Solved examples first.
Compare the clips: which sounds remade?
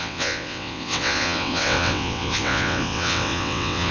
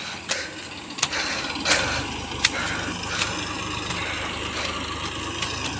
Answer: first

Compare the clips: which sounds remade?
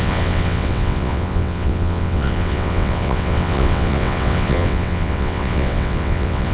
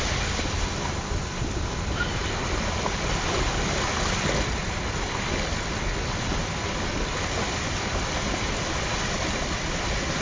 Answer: first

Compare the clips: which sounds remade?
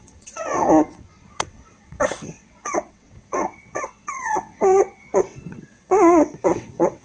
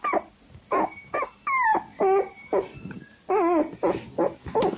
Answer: first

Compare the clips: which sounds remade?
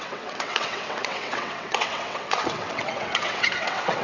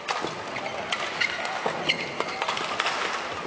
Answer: first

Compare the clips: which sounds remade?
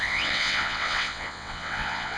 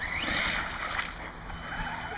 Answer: first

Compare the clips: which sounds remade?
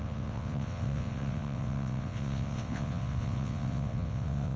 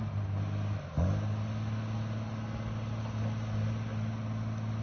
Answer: first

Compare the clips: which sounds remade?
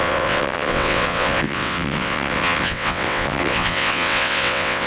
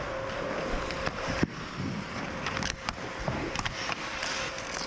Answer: first